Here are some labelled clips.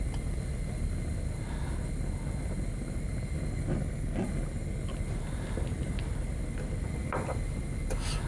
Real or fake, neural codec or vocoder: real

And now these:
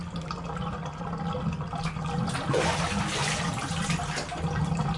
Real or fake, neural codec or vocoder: real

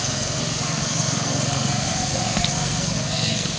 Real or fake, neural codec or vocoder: fake, codec, SNAC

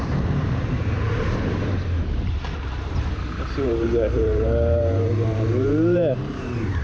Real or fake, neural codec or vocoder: fake, vocoder, BigVGAN v2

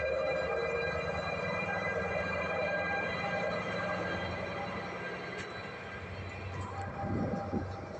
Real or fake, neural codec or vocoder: real